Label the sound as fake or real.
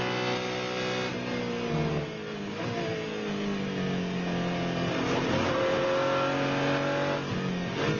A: real